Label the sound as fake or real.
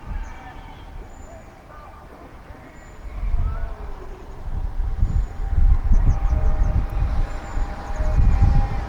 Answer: real